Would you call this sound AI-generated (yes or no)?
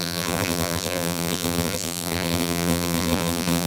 yes